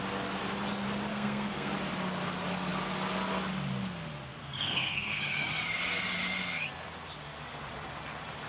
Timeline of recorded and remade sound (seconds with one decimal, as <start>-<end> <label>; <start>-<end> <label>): 0.0-1.1 recorded; 1.1-1.7 remade; 1.7-4.4 recorded; 4.4-5.2 remade; 5.2-8.5 recorded